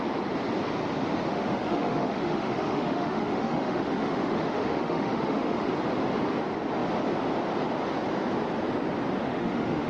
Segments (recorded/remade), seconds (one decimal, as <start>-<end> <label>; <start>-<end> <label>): 0.0-1.3 recorded; 1.3-5.7 remade; 5.7-9.2 recorded; 9.2-9.9 remade